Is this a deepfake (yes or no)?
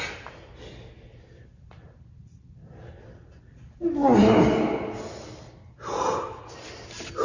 no